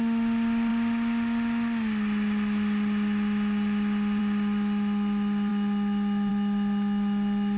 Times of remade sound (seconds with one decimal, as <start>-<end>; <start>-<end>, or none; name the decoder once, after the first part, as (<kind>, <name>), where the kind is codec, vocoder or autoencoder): none